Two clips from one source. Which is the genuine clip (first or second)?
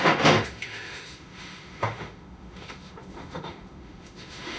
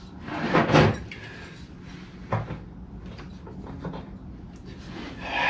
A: second